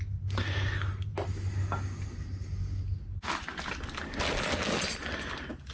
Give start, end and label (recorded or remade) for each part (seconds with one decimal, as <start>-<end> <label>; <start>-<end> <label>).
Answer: 0.0-5.7 recorded